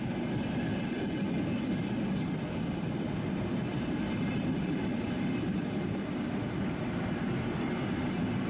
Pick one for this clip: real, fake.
fake